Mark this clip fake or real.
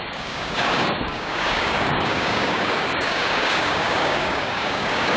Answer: fake